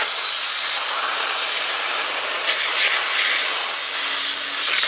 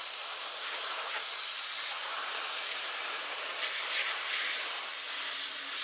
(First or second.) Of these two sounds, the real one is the first